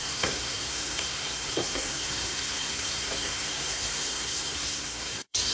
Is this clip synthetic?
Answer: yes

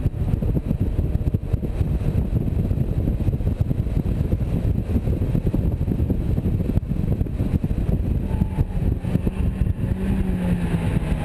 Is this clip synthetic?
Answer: no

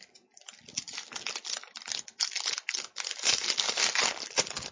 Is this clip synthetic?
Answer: no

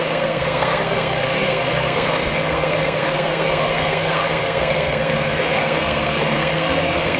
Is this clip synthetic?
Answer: yes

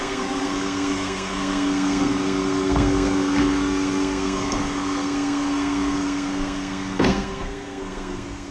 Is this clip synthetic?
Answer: yes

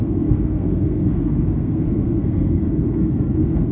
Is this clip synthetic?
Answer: yes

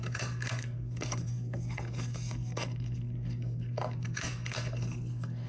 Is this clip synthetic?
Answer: yes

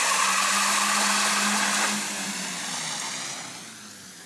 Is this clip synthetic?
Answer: no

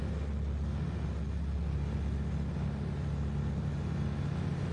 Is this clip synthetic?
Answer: no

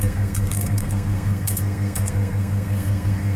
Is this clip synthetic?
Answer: yes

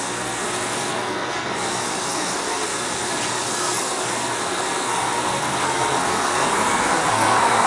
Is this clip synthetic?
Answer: yes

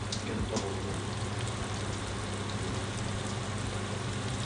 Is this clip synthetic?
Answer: no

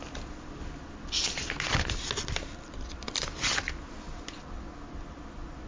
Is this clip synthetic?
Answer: no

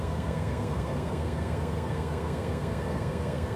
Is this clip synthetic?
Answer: yes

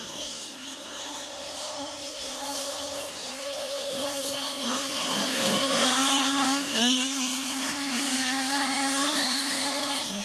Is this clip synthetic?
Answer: yes